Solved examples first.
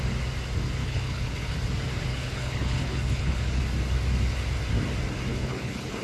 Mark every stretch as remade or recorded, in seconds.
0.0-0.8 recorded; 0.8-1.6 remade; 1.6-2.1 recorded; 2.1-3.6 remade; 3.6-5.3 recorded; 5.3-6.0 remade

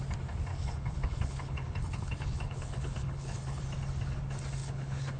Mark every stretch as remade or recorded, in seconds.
0.0-0.5 recorded; 0.5-3.6 remade; 3.6-4.6 recorded; 4.6-5.2 remade

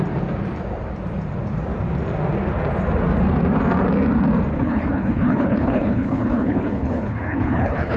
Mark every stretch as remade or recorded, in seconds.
0.0-4.5 recorded; 4.5-8.0 remade

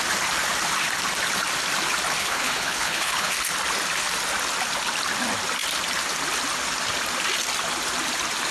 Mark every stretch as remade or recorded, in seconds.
0.0-2.2 recorded; 2.2-3.3 remade; 3.3-8.5 recorded

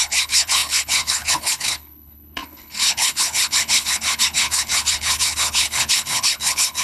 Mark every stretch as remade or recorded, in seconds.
0.0-6.8 remade